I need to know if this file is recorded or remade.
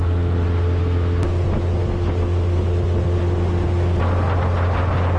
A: recorded